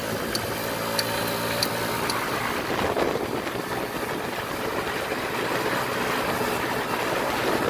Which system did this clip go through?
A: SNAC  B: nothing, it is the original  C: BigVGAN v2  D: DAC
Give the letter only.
B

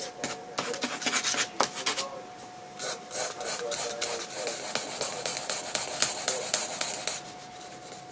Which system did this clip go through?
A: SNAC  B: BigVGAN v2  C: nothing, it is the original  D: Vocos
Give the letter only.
C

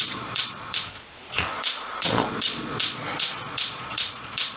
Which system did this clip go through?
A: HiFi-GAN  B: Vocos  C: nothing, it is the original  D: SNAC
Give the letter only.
B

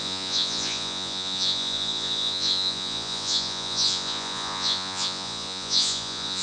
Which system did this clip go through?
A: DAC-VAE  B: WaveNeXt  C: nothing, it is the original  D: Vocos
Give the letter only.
D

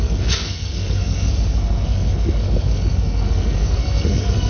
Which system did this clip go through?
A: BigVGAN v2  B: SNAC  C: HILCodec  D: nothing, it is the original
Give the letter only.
B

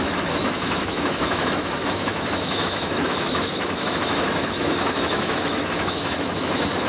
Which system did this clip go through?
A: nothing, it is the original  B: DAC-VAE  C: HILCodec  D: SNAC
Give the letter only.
B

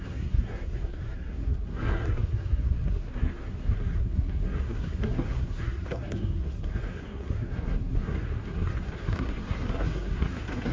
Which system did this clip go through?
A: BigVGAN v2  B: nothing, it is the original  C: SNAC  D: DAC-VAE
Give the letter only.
C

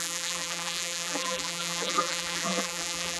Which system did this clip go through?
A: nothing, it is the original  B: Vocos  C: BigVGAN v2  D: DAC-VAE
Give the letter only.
C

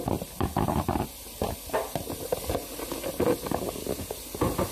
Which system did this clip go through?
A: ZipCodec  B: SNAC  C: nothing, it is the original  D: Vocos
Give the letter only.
C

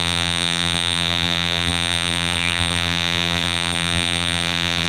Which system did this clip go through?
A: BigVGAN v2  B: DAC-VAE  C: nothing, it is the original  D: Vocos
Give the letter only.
A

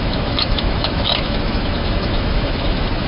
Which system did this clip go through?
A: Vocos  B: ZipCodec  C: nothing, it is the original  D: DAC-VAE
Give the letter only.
D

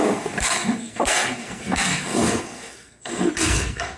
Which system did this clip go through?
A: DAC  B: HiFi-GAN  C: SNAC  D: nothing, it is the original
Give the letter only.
C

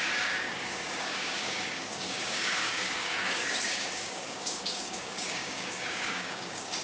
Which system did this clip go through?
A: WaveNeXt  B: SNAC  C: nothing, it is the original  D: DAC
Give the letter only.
D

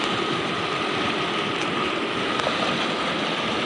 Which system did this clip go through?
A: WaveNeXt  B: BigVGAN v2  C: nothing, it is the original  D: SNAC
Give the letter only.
C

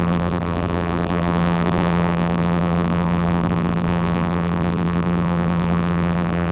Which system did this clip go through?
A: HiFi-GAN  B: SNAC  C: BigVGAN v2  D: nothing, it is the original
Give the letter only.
C